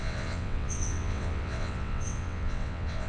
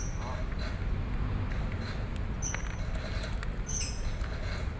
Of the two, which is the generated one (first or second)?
first